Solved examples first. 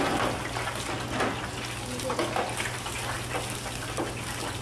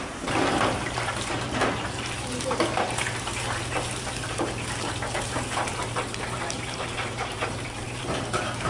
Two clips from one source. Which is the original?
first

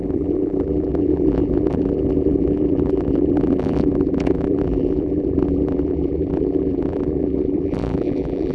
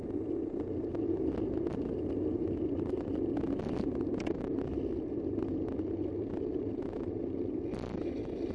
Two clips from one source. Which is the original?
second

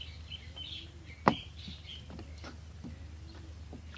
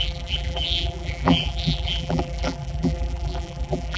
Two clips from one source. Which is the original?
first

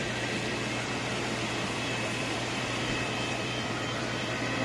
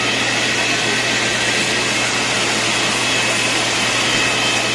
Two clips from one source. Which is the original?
second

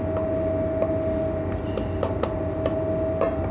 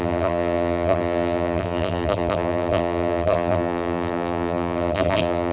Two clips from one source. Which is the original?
first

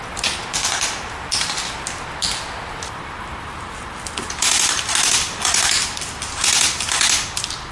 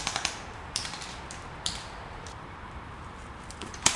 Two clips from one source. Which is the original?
first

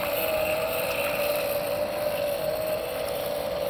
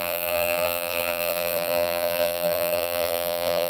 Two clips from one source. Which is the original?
first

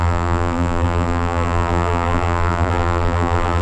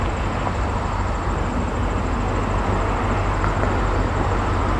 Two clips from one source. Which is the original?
second